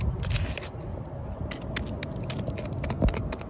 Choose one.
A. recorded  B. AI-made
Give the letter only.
A